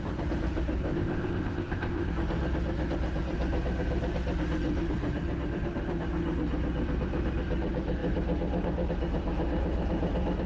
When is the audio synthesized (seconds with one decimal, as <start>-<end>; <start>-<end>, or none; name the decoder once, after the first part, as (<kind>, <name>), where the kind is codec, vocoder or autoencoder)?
0.8-2.1 (codec, ZipCodec)